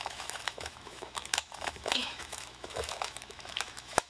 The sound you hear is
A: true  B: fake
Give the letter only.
B